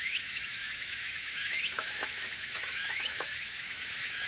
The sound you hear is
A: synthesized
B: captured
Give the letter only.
A